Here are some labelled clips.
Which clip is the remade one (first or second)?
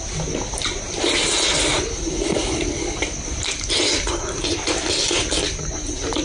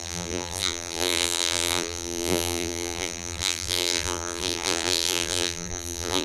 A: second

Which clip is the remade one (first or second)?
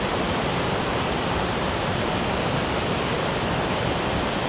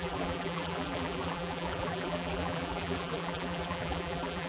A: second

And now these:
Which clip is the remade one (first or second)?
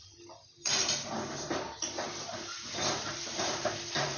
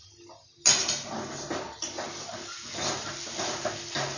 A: first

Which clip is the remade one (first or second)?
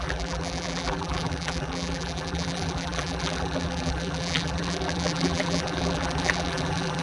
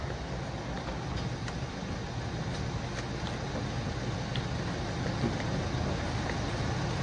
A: first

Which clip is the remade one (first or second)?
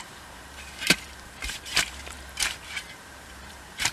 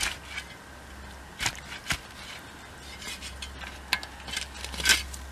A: first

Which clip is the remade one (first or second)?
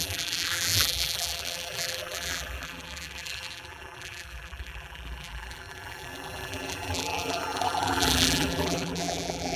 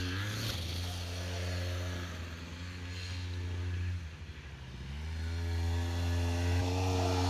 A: first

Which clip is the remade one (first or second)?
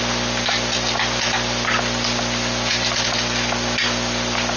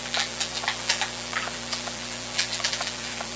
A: second